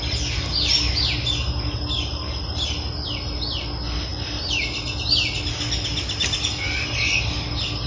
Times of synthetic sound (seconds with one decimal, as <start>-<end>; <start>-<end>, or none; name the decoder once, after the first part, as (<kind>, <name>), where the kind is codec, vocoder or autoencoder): none